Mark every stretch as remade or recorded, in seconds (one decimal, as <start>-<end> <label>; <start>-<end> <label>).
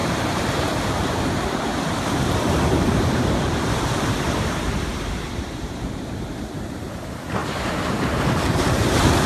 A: 0.0-1.8 remade; 1.8-4.9 recorded; 4.9-6.3 remade; 6.3-9.3 recorded